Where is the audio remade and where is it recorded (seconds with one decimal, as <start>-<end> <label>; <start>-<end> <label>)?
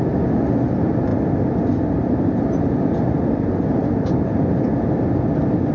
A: 0.0-5.7 recorded